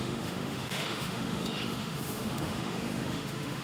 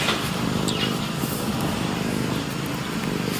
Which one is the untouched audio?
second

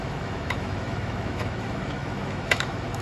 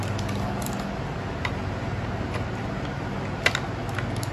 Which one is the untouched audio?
second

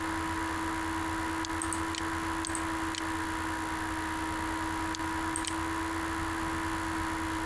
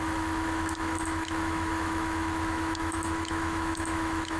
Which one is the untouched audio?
first